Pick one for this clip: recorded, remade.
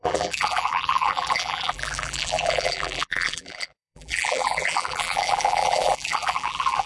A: remade